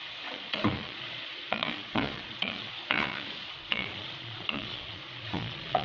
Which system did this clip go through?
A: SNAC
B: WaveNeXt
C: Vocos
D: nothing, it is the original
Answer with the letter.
C